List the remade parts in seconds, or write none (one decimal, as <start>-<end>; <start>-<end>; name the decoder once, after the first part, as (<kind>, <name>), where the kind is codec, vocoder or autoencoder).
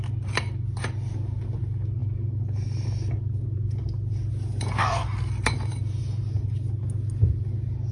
none